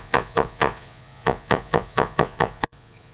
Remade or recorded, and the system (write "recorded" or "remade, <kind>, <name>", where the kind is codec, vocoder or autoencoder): remade, vocoder, Vocos